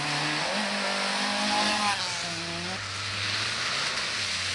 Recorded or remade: recorded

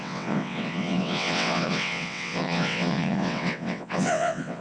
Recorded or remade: remade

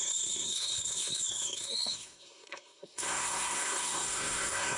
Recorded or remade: remade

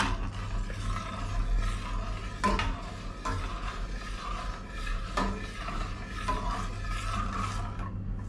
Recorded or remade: recorded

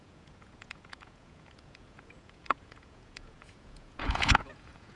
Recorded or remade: remade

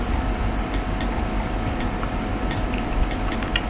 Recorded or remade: recorded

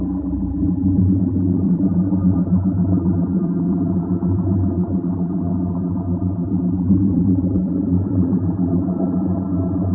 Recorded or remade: remade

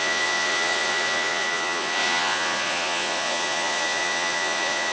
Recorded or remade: remade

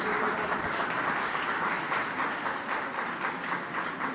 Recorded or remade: recorded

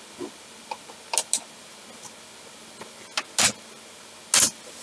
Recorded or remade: recorded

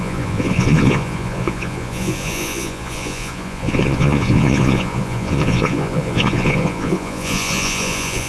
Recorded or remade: remade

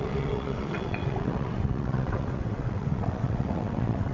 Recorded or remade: remade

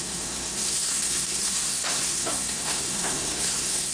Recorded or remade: remade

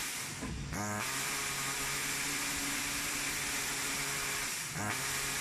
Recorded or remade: recorded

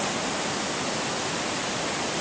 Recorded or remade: recorded